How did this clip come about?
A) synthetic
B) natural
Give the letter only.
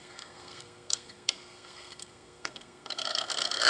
A